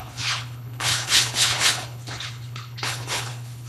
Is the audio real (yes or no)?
no